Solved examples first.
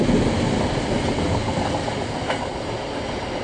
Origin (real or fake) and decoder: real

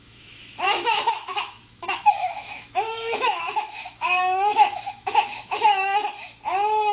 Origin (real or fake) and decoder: fake, autoencoder, DAC-VAE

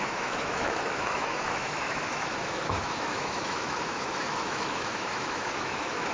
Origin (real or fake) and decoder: fake, autoencoder, DAC-VAE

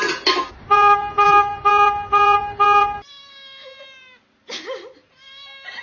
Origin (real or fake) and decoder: real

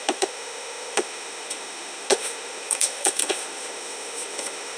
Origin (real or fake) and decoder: fake, autoencoder, DAC-VAE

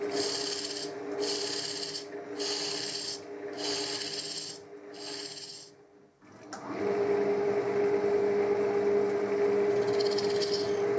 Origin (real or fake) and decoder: real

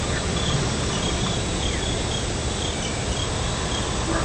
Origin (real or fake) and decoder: real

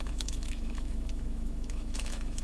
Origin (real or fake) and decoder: fake, autoencoder, DAC-VAE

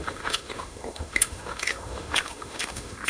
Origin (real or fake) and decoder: fake, autoencoder, DAC-VAE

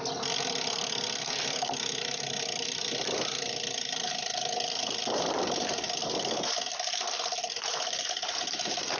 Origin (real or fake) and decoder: real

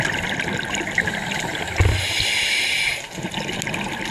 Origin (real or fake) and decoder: real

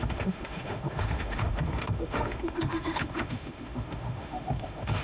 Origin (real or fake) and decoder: fake, autoencoder, DAC-VAE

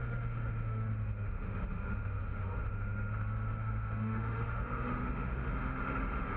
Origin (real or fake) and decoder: fake, autoencoder, DAC-VAE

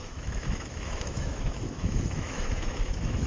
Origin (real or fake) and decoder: fake, autoencoder, DAC-VAE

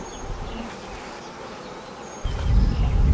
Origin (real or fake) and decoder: real